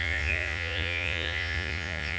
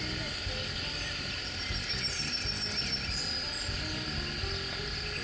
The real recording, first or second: second